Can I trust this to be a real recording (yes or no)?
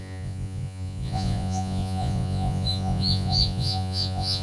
no